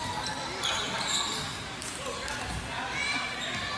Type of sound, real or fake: real